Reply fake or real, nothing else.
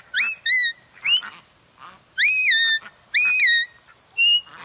real